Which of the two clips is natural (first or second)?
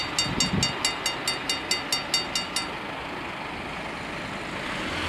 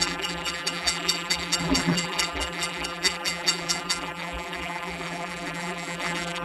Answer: first